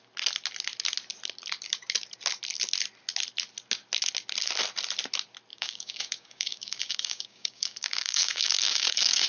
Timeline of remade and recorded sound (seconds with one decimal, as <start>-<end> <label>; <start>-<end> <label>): 0.0-5.5 recorded; 5.5-9.3 remade